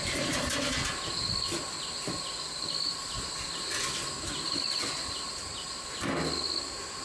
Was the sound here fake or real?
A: real